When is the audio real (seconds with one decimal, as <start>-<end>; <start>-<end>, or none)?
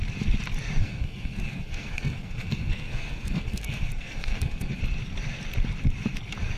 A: 0.0-0.8; 4.8-6.6